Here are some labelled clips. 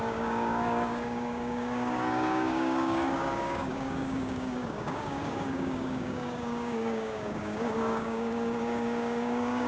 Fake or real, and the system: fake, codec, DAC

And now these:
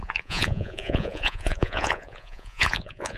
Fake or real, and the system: fake, vocoder, Vocos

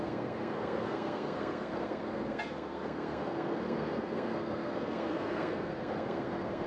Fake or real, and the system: fake, codec, SNAC